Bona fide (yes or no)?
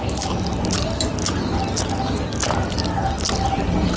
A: yes